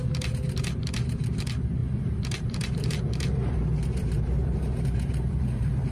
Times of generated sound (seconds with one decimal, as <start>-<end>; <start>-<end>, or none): 0.0-5.9